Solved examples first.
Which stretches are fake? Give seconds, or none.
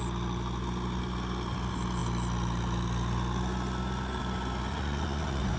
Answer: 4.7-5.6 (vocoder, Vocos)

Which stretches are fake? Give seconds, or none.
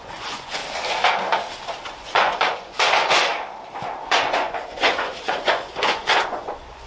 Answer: 0.0-0.6 (vocoder, Vocos); 2.0-3.3; 4.0-6.9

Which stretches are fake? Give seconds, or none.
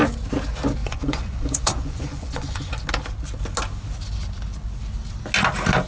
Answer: 0.8-2.8 (vocoder, Vocos)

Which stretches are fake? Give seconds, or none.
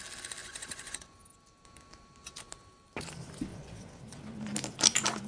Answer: 0.4-1.2 (vocoder, Vocos); 3.5-4.0